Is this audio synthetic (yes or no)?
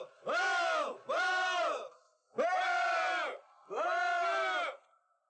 no